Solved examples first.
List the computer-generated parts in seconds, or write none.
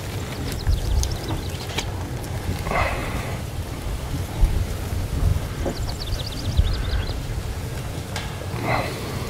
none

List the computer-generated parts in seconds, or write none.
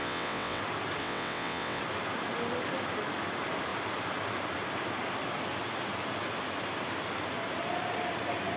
0.0-0.6 (vocoder, WaveNeXt); 1.0-1.8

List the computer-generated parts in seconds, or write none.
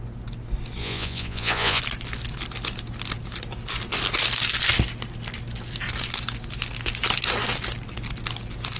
0.8-1.8 (vocoder, Vocos)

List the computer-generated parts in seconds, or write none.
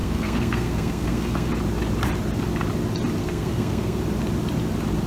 0.0-1.5 (codec, SNAC); 3.2-4.0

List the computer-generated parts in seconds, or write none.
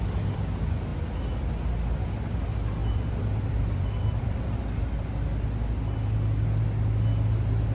2.8-4.7 (vocoder, BigVGAN v2)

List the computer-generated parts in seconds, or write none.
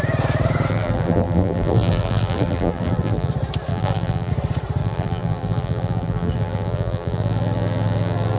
0.7-3.3 (vocoder, BigVGAN v2); 3.7-4.3; 4.8-8.4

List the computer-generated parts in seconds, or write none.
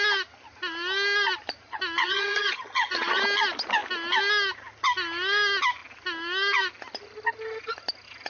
2.0-3.2 (vocoder, HiFi-GAN)